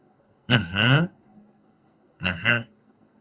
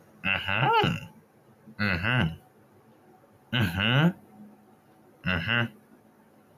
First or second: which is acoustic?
second